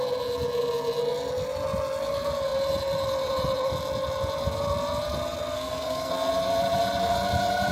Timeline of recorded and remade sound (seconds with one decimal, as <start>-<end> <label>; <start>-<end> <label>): 0.0-5.5 recorded; 5.5-6.1 remade; 6.1-7.7 recorded